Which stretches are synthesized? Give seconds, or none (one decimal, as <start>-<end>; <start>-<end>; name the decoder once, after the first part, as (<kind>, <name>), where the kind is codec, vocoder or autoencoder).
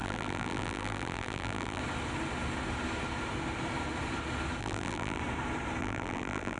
0.0-1.8 (vocoder, BigVGAN v2); 4.6-5.2; 5.8-6.6